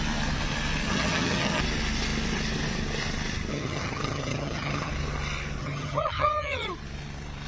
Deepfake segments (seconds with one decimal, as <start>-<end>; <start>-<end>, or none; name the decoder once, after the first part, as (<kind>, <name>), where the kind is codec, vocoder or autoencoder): 0.9-1.6 (vocoder, HiFi-GAN); 3.5-4.9; 5.6-6.7